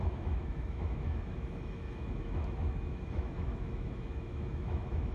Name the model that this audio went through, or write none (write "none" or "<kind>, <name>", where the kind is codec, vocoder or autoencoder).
autoencoder, DAC-VAE